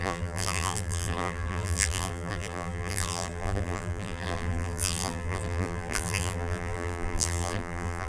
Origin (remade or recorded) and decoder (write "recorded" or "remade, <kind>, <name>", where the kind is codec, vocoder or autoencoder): remade, vocoder, BigVGAN v2